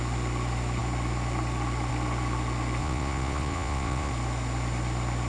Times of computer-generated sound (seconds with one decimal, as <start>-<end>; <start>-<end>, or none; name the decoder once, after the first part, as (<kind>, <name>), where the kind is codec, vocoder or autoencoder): 2.8-4.1 (vocoder, Vocos)